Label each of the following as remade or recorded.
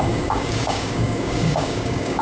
remade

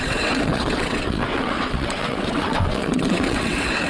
remade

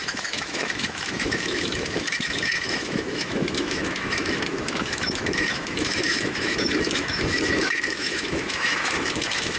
remade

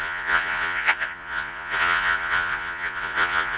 remade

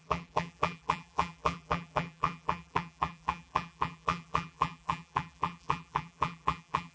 remade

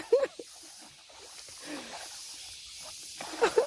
recorded